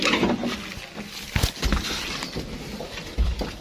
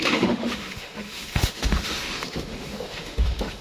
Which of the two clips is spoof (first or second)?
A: second